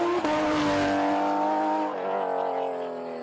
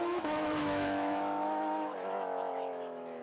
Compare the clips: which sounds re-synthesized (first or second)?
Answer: second